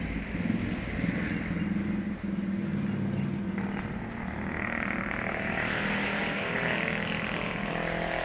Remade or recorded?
recorded